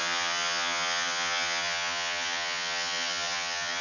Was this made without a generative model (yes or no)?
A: no